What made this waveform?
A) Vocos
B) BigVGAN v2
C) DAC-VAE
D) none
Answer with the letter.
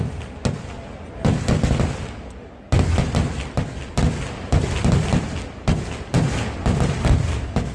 D